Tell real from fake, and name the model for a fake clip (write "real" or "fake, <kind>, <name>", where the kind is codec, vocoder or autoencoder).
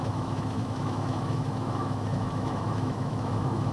fake, autoencoder, DAC-VAE